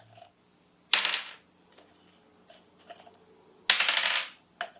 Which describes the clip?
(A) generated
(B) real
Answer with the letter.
B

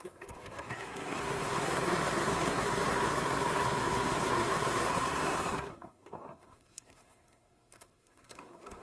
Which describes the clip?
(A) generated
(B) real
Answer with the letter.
A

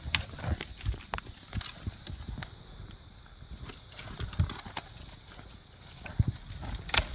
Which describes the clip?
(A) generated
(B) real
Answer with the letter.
B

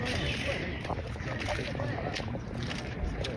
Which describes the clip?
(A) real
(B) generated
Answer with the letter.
B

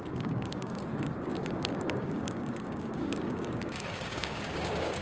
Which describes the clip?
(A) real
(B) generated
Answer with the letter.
B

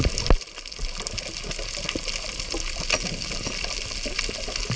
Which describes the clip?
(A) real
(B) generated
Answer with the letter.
A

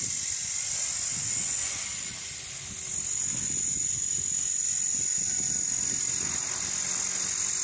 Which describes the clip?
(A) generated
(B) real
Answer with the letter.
B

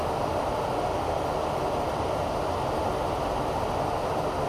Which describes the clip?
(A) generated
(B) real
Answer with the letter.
B